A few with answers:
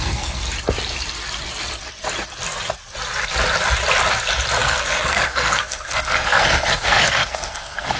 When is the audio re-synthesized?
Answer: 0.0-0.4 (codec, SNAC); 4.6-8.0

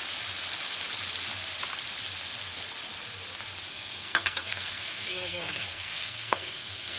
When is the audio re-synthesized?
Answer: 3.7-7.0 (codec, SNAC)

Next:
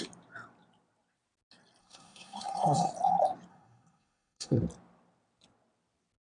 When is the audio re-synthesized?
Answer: 1.8-2.9 (codec, SNAC); 3.5-4.6